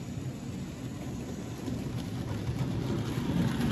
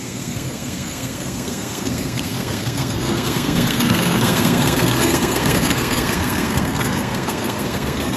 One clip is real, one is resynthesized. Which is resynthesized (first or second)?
second